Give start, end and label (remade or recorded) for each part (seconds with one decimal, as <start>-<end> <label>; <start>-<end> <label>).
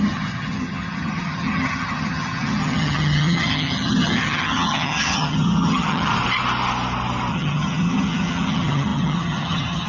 0.0-6.1 remade; 6.1-7.3 recorded; 7.3-9.9 remade